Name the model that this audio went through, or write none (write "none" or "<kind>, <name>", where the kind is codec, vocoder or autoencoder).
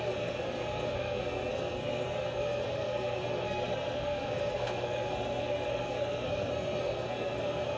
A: codec, SNAC